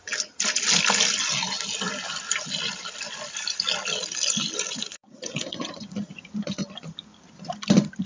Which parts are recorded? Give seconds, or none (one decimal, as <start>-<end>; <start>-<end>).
0.0-4.7; 6.3-8.1